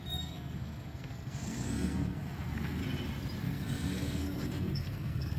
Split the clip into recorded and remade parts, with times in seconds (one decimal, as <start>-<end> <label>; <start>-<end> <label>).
0.0-2.8 remade; 2.8-3.4 recorded; 3.4-5.4 remade